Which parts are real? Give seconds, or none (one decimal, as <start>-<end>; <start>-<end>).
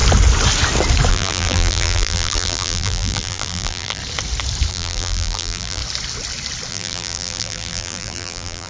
0.0-1.1; 4.0-4.7; 5.8-6.7